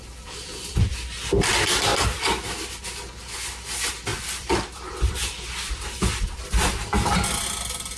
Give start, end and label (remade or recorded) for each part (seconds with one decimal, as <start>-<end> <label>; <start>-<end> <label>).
0.0-0.8 remade; 0.8-4.1 recorded; 4.1-6.7 remade; 6.7-8.0 recorded